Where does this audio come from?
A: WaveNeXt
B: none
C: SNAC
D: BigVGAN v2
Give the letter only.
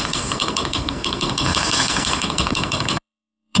C